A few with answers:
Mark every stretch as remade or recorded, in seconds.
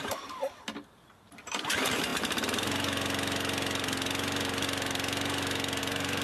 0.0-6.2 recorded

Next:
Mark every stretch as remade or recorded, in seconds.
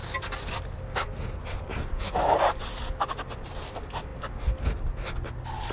0.0-5.7 recorded